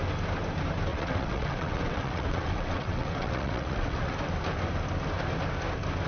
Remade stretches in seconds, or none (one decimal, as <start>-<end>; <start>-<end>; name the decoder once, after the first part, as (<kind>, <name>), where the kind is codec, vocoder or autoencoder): 0.9-4.1 (vocoder, WaveNeXt)